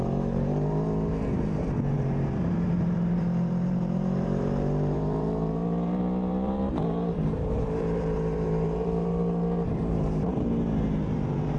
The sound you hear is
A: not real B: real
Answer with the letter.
A